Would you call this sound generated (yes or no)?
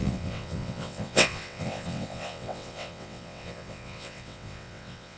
yes